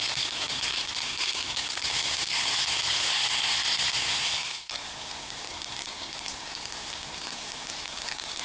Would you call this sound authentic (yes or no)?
no